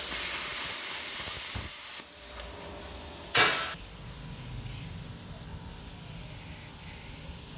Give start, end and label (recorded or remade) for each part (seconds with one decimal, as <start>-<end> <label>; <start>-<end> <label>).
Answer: 0.0-5.5 remade; 5.5-6.7 recorded; 6.7-7.6 remade